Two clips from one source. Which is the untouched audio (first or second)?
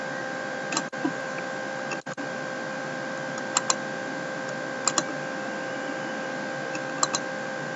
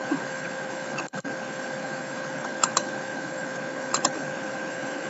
first